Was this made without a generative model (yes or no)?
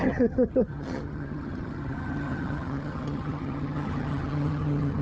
no